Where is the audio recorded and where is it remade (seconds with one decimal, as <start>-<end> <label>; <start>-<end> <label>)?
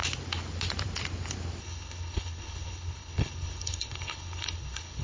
0.0-1.6 recorded; 1.6-5.0 remade